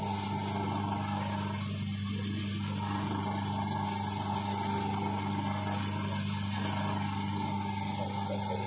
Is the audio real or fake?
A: real